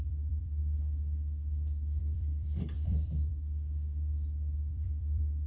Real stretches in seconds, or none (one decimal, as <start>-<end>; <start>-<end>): 0.6-2.0; 3.3-4.7